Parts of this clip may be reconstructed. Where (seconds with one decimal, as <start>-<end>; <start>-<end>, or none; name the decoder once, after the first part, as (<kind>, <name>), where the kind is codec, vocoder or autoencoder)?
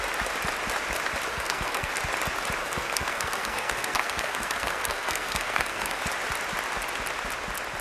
1.3-1.9 (codec, SNAC); 2.6-6.0